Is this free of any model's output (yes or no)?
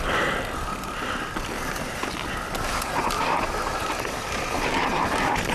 yes